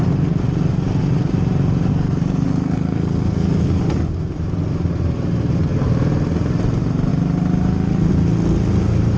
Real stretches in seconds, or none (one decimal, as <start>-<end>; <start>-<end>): 0.0-1.9; 3.8-9.2